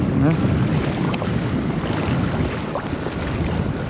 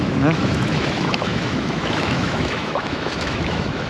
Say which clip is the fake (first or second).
second